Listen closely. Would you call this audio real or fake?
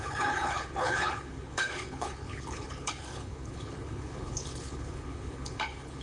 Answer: fake